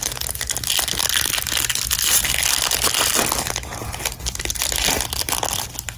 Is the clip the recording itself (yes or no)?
yes